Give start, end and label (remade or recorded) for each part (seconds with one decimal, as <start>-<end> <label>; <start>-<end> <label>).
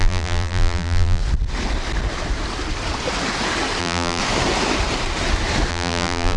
0.0-1.2 remade; 1.2-3.8 recorded; 3.8-4.2 remade; 4.2-5.7 recorded; 5.7-6.4 remade